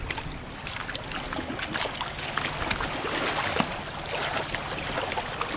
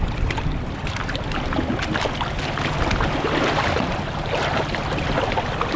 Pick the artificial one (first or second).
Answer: second